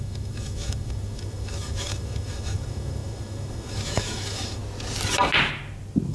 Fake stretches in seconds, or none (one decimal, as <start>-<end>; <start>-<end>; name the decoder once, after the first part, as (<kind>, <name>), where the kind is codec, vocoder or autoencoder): 0.0-4.6 (autoencoder, DAC-VAE)

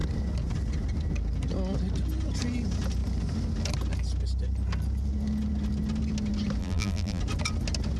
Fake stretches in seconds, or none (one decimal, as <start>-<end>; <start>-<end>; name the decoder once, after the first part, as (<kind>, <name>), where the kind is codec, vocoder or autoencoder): 6.6-7.2 (vocoder, BigVGAN v2)